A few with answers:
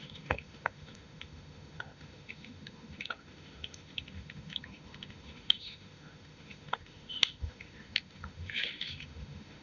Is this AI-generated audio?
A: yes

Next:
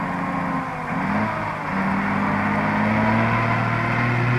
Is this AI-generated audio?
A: no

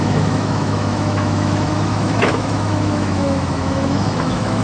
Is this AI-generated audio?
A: yes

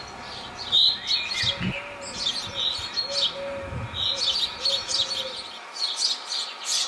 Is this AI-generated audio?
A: no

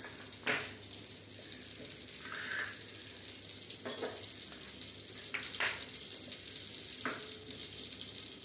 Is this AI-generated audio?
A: no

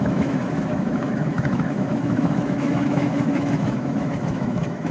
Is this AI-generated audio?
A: yes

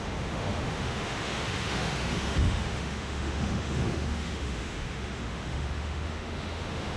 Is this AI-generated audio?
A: yes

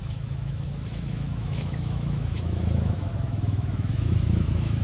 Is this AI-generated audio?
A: yes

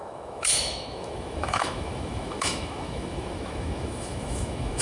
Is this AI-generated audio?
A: yes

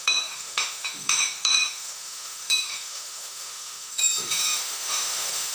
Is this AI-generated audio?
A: yes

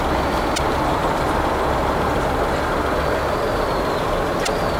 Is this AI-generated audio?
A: no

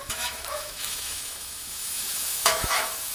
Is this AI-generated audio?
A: yes